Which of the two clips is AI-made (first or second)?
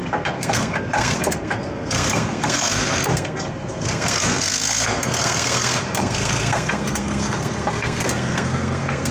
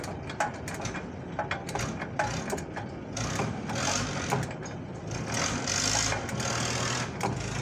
first